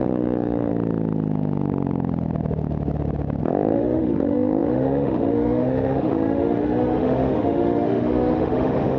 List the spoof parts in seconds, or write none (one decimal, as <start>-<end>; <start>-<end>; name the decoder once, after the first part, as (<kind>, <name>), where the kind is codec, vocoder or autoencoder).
0.0-0.7 (autoencoder, DAC-VAE); 3.4-9.0